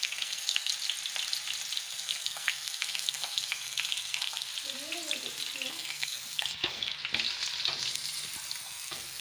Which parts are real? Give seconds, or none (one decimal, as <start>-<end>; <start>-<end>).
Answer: 0.7-1.8; 4.5-5.7; 7.0-8.6